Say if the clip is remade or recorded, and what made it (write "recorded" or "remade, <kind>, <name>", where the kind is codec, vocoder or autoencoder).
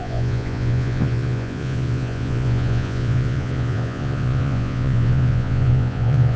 remade, vocoder, Vocos